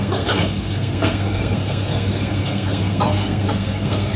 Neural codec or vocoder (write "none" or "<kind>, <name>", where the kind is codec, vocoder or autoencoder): codec, SNAC